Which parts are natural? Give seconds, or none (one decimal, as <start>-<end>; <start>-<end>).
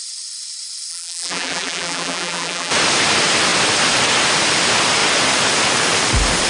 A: 0.0-0.9; 2.7-6.5